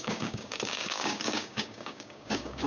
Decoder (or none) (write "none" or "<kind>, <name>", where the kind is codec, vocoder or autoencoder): codec, DAC